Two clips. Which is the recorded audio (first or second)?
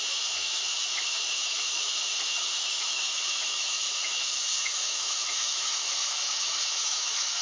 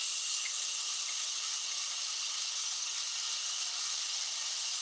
second